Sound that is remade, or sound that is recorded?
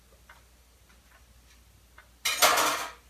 recorded